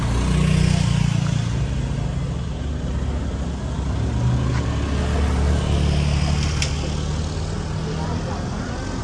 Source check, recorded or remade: recorded